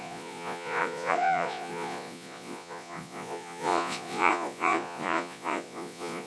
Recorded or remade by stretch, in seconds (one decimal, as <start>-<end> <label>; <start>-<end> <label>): 0.0-6.3 remade